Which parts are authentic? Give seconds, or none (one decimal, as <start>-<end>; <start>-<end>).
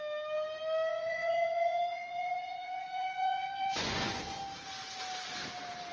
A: 0.0-0.9; 4.4-5.9